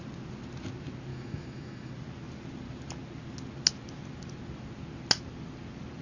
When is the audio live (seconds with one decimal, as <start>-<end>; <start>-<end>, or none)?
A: 0.0-1.1; 1.9-6.0